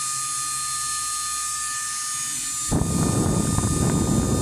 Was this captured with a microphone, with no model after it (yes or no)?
yes